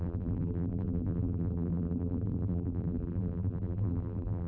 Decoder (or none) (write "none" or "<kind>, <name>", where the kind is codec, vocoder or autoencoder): vocoder, BigVGAN v2